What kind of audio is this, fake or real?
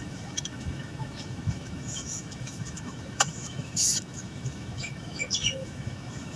fake